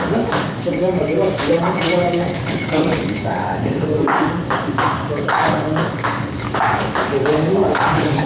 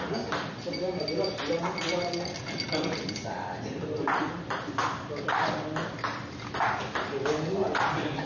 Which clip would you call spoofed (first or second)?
first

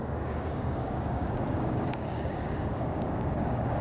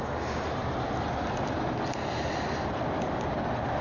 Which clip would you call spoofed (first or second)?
first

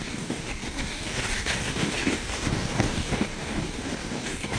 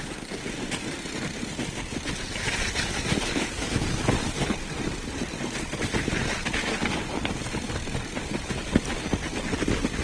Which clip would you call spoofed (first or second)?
first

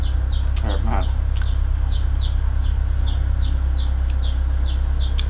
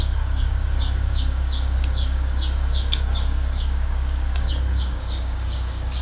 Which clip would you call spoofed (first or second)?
second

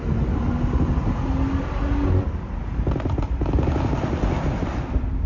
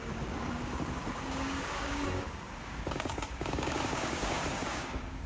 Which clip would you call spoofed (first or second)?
second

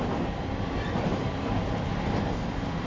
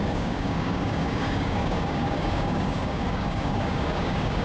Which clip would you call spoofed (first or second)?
second